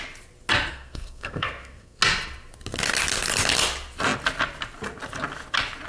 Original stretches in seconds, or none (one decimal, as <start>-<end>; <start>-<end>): 0.0-0.7; 2.0-5.9